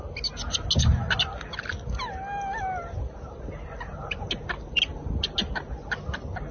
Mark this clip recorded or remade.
recorded